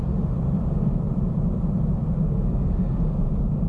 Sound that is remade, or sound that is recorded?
remade